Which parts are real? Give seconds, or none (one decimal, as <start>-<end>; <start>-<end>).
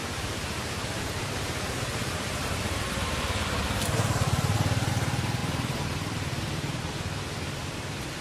4.9-8.2